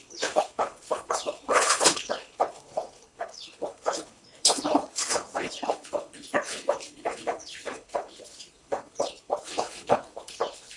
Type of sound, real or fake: fake